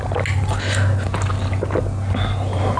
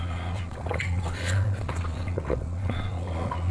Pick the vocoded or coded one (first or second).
second